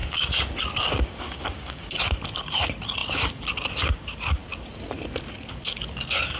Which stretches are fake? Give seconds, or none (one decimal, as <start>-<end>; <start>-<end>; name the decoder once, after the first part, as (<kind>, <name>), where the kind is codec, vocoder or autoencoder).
0.0-2.0 (codec, DAC)